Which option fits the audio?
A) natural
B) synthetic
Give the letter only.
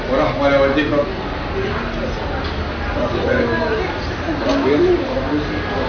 A